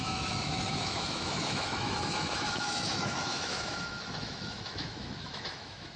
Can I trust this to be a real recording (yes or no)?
no